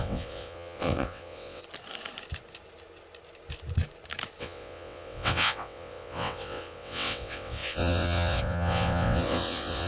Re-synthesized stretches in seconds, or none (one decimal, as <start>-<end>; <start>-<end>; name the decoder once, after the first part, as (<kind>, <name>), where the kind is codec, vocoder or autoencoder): 0.0-1.6 (vocoder, WaveNeXt); 4.4-9.9

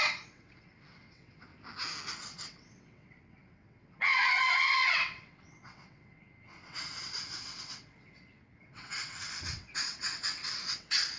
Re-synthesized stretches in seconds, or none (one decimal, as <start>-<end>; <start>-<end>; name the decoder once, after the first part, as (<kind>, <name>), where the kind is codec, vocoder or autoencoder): 0.0-1.5 (vocoder, WaveNeXt); 2.1-11.2